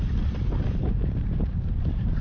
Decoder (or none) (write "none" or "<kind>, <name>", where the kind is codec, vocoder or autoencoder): vocoder, BigVGAN v2